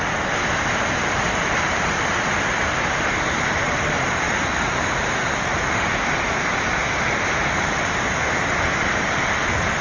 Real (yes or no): yes